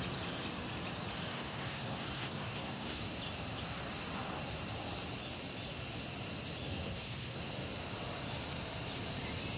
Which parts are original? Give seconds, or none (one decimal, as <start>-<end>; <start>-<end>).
0.0-1.3; 3.0-6.7; 7.4-9.6